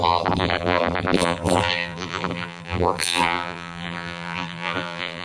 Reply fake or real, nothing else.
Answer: fake